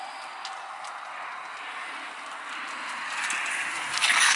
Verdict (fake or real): real